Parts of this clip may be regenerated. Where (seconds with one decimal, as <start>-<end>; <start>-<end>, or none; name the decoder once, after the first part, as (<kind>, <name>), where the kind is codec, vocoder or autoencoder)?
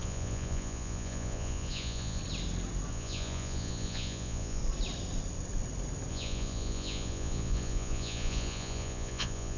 0.0-2.2 (vocoder, Vocos); 2.9-4.6; 6.1-9.6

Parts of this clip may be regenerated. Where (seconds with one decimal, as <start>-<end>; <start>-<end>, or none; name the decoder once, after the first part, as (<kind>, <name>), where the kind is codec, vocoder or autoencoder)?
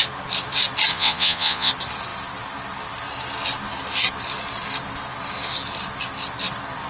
0.9-1.7 (vocoder, Vocos)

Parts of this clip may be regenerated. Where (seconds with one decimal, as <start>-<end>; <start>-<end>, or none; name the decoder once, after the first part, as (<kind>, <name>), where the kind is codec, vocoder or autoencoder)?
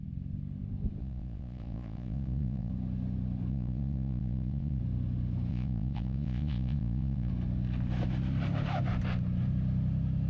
1.0-2.7 (vocoder, Vocos); 3.5-4.8; 5.5-7.3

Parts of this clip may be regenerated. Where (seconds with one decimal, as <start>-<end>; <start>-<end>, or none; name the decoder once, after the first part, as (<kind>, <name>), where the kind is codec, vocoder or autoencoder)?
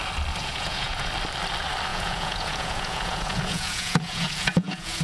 0.4-1.1 (vocoder, Vocos); 1.9-5.0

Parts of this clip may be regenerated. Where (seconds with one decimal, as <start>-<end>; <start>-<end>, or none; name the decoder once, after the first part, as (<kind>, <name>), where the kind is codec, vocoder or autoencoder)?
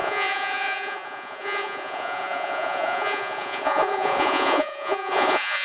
0.0-5.6 (vocoder, Vocos)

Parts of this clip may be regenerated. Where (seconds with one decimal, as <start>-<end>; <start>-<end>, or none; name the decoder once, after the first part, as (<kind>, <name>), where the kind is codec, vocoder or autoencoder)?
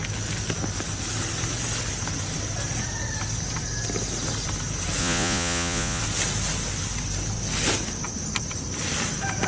5.0-6.0 (vocoder, Vocos)